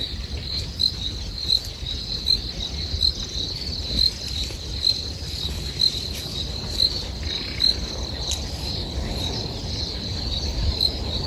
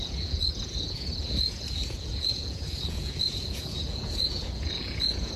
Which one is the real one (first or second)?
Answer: first